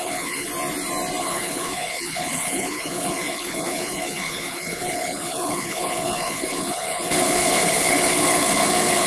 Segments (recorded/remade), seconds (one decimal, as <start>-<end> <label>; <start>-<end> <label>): 0.0-0.5 remade; 0.5-1.2 recorded; 1.2-9.1 remade